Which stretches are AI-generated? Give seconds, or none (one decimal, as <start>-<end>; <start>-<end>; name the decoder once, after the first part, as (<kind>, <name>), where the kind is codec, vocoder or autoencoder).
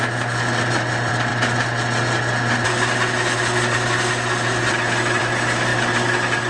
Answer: none